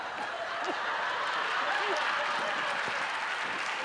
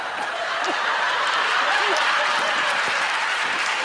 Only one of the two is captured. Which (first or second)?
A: first